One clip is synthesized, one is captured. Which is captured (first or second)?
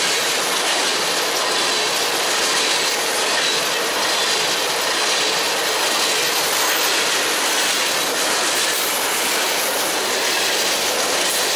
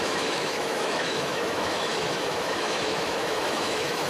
first